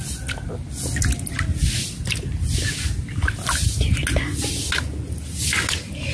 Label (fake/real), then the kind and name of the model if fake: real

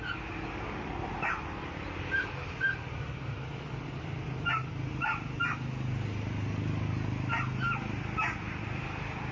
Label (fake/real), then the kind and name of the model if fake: real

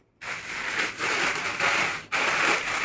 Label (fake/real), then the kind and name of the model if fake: real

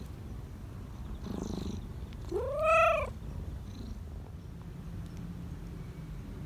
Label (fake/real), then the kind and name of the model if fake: real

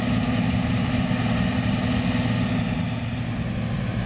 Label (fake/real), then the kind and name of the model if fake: real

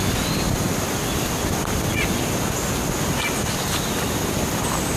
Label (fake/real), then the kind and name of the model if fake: real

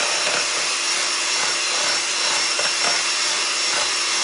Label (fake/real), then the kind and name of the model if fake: real